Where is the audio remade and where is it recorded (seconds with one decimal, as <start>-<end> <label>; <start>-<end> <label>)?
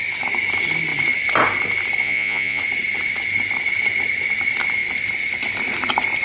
0.0-2.0 recorded; 2.0-2.6 remade; 2.6-6.2 recorded